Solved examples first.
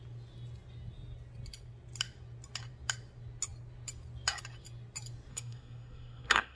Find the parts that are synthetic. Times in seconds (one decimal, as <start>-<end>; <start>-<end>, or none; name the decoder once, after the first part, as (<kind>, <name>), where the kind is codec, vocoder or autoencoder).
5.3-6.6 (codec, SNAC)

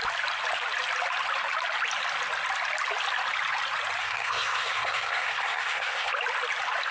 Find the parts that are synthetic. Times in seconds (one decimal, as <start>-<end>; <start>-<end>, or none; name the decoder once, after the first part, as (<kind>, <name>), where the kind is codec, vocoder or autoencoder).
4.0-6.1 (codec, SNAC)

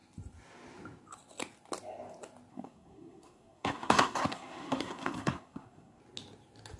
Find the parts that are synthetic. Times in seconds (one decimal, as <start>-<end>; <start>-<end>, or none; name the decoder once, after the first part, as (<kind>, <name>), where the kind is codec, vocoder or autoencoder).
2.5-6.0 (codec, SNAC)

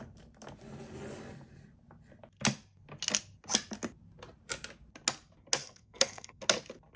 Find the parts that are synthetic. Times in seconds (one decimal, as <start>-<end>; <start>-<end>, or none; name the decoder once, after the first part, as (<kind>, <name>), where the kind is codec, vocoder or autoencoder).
5.6-6.4 (codec, SNAC)

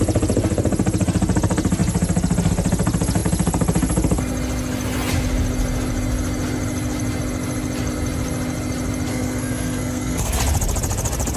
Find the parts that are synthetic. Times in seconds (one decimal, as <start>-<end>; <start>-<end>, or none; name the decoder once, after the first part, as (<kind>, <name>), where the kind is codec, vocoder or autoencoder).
9.1-10.4 (codec, SNAC)